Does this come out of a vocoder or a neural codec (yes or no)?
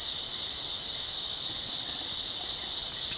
no